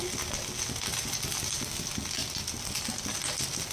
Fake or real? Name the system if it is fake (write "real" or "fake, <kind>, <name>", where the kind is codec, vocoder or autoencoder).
real